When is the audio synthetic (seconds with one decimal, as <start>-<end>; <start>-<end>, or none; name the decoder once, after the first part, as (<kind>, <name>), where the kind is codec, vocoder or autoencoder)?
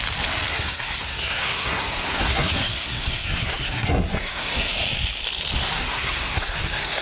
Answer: 0.5-4.7 (codec, SNAC); 5.8-7.0